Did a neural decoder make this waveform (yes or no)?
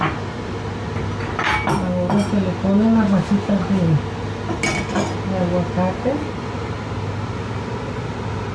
no